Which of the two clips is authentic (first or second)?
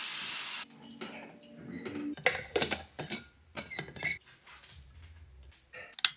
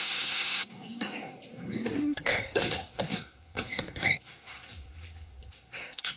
first